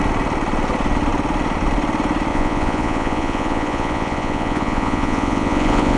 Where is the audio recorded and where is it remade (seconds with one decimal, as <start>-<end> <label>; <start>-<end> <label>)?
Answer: 0.0-2.3 recorded; 2.3-6.0 remade